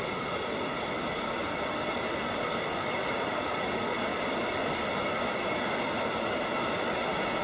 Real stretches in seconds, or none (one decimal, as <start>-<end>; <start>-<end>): 0.0-7.4